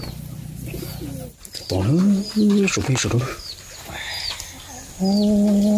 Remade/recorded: recorded